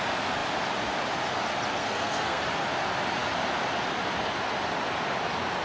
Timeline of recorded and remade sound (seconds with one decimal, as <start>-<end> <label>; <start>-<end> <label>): 0.0-1.8 recorded; 1.8-2.4 remade; 2.4-5.6 recorded